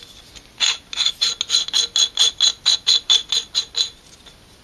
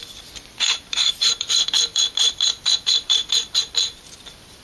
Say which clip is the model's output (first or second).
second